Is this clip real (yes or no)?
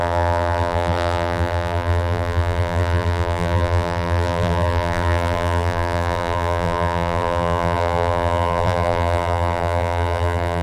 no